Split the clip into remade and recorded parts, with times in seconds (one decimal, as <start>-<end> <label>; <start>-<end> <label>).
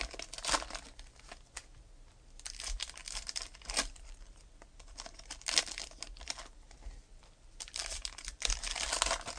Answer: 0.0-3.0 recorded; 3.0-5.3 remade; 5.3-7.0 recorded; 7.0-9.4 remade